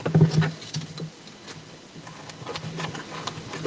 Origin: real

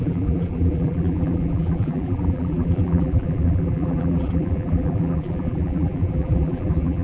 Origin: fake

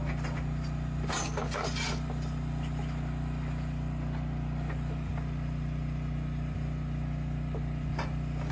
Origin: real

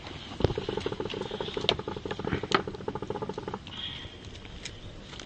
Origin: real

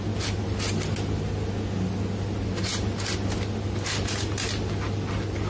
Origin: real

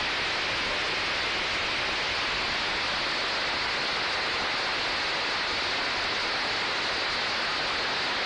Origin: real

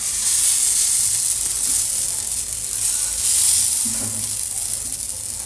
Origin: real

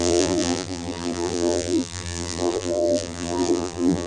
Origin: fake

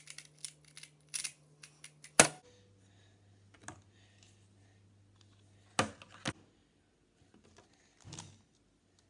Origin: real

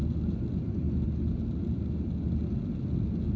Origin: real